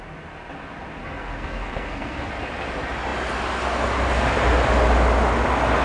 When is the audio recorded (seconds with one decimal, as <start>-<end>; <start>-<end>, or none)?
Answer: 0.0-1.0; 2.3-5.8